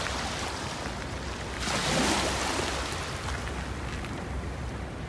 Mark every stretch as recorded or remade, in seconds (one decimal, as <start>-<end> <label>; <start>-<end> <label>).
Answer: 0.0-5.1 recorded